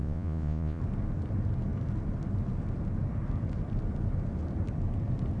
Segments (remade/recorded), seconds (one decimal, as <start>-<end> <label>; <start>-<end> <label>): 0.0-0.8 remade; 0.8-5.4 recorded